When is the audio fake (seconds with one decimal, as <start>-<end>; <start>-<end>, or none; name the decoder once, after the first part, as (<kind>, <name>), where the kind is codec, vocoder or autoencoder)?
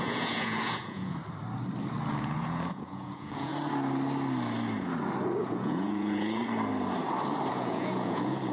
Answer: 0.0-1.2 (vocoder, Vocos); 2.1-3.5; 5.4-6.4; 7.5-8.5